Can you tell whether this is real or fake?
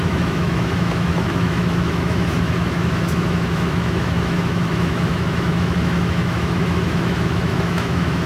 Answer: fake